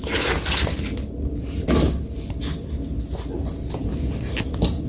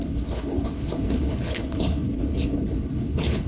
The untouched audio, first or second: first